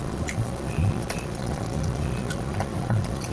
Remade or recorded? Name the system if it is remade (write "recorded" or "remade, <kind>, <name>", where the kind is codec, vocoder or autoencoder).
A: remade, vocoder, Vocos